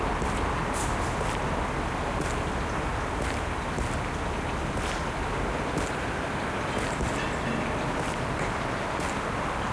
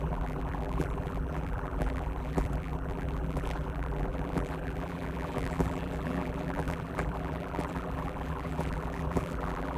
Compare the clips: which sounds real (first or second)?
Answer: first